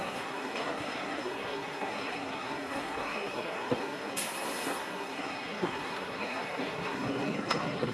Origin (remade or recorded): remade